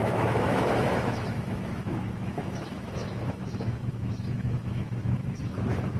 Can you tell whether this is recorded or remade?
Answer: remade